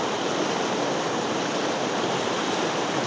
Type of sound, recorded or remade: recorded